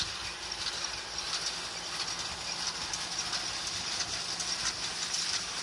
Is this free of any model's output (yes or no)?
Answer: yes